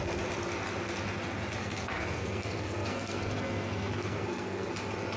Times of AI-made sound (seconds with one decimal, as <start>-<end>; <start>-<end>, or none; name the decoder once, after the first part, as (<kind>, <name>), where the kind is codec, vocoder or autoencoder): 1.6-4.7 (codec, SNAC)